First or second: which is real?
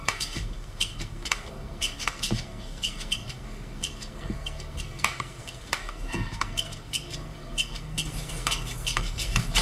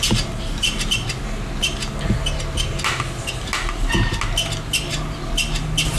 second